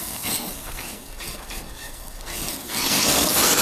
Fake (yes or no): yes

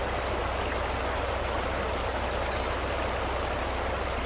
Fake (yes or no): no